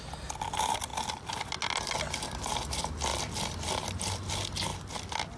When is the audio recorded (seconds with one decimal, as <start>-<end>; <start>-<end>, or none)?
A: 0.0-3.1; 4.3-5.4